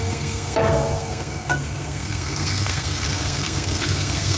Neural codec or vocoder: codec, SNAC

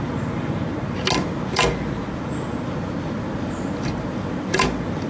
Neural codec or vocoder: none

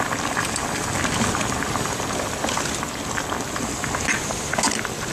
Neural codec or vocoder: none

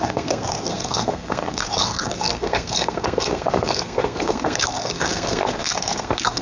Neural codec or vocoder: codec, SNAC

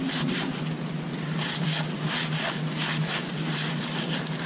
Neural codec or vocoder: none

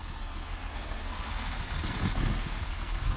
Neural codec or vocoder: codec, SNAC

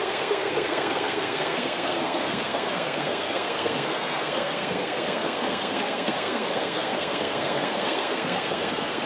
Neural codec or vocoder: codec, SNAC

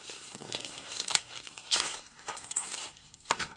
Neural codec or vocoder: codec, SNAC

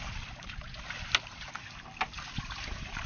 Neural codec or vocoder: none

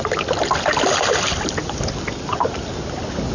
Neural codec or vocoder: none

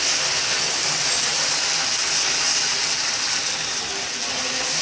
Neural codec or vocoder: none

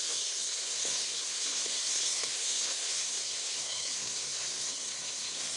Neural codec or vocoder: codec, SNAC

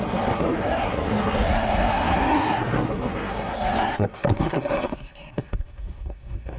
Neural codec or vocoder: codec, SNAC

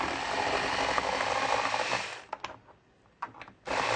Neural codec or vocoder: none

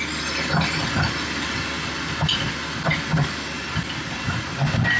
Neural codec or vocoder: none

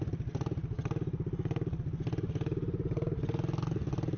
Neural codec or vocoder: none